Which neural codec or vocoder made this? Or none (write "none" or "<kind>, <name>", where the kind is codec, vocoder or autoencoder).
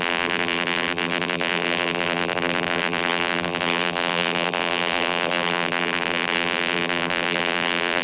vocoder, BigVGAN v2